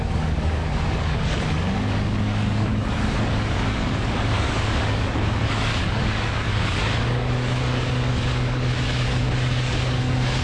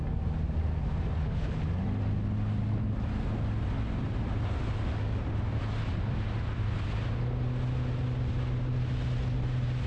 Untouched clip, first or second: second